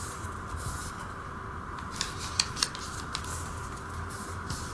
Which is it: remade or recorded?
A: recorded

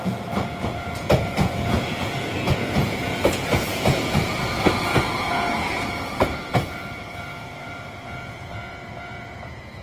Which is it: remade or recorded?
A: remade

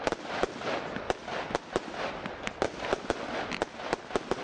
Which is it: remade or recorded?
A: recorded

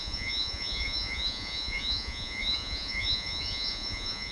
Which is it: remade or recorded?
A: remade